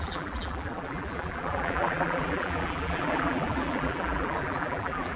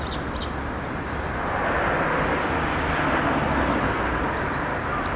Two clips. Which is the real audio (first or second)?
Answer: second